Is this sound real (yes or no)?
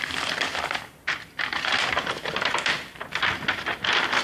yes